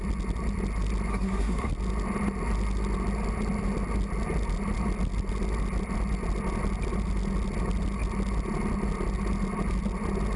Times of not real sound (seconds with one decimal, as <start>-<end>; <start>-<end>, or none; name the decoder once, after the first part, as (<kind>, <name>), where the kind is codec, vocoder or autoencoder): 1.1-1.7 (codec, SNAC)